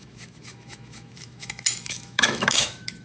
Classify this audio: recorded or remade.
remade